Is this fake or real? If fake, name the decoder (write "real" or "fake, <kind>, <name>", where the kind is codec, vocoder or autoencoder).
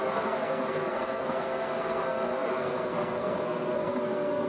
fake, codec, SNAC